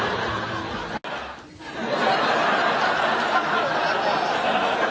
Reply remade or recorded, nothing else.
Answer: recorded